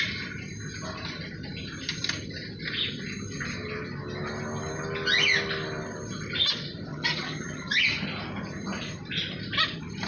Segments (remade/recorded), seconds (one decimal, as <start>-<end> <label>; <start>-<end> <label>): 0.0-6.9 recorded; 6.9-7.8 remade; 7.8-10.1 recorded